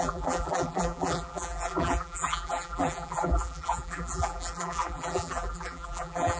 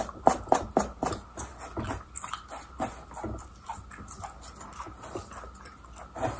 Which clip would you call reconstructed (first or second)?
first